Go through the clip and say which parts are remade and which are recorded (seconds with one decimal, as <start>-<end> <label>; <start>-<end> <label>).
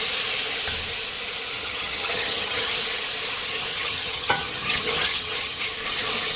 0.0-1.6 recorded; 1.6-2.7 remade; 2.7-3.7 recorded; 3.7-5.6 remade; 5.6-6.4 recorded